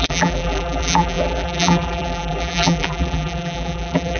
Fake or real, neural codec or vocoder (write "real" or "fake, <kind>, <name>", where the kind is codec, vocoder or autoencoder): fake, vocoder, BigVGAN v2